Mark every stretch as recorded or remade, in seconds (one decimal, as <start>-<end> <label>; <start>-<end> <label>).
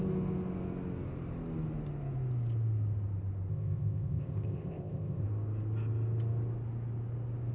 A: 0.0-3.5 recorded; 3.5-5.2 remade; 5.2-7.5 recorded